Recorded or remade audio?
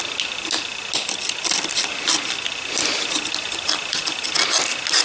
recorded